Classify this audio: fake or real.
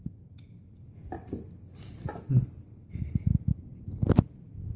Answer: real